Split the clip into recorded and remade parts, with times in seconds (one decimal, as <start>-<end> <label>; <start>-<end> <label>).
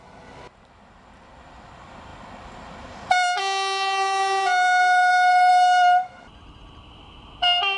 0.0-7.8 recorded